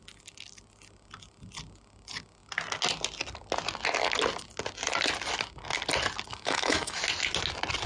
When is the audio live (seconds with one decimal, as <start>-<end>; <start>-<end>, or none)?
0.0-6.3; 7.0-7.9